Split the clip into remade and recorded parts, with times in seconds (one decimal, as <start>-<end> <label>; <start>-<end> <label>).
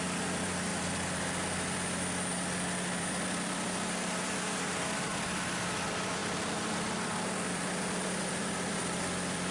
0.0-0.7 remade; 0.7-3.0 recorded; 3.0-5.1 remade; 5.1-5.6 recorded; 5.6-9.5 remade